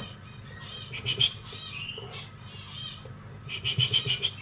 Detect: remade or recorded recorded